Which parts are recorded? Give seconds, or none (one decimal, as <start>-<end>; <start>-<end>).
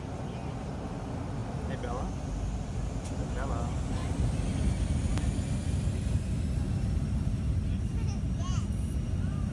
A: 0.0-9.5